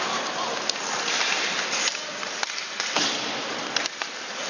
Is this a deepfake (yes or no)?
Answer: no